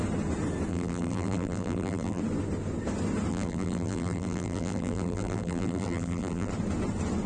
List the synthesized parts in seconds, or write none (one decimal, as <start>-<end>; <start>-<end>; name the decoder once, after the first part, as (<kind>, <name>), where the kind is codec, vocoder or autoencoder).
0.7-2.2 (vocoder, BigVGAN v2); 3.3-6.5